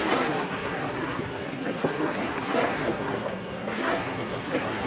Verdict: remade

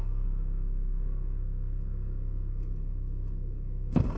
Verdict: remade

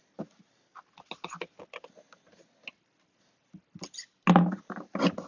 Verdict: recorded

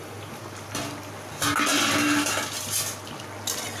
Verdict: recorded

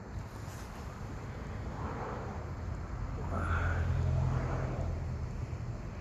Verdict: recorded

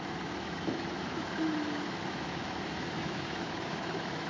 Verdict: remade